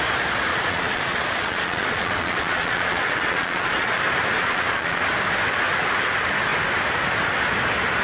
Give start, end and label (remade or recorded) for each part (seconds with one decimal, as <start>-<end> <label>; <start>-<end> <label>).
0.0-0.5 recorded; 0.5-4.0 remade; 4.0-4.4 recorded; 4.4-5.0 remade; 5.0-8.0 recorded